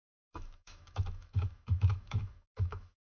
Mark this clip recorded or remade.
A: remade